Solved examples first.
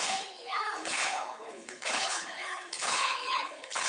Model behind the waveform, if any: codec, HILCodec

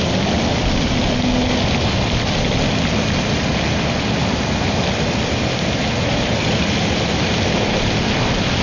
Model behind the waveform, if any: none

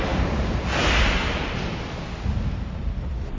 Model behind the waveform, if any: none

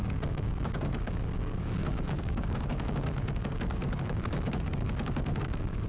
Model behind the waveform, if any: codec, DAC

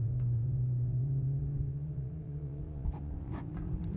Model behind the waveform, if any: vocoder, Vocos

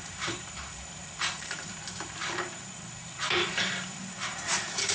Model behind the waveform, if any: vocoder, BigVGAN v2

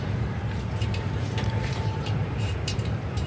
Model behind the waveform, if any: vocoder, BigVGAN v2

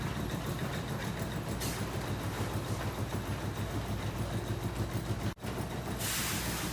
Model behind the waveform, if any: none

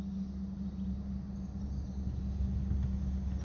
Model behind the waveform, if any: none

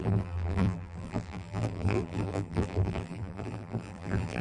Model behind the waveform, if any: vocoder, BigVGAN v2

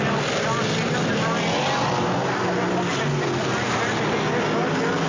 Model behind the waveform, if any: none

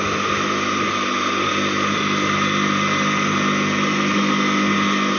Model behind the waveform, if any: none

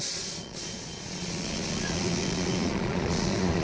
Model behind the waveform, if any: vocoder, Vocos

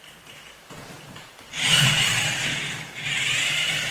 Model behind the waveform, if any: vocoder, BigVGAN v2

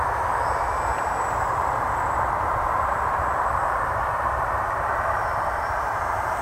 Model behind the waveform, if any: vocoder, BigVGAN v2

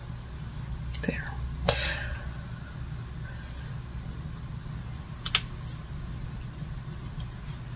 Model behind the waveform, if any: none